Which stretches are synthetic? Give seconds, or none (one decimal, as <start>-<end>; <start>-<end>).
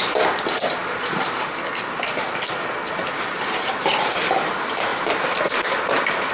4.9-6.3